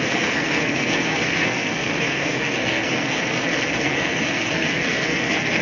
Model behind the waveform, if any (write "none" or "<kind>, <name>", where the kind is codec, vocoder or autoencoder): codec, SNAC